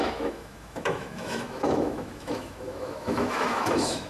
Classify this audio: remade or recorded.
remade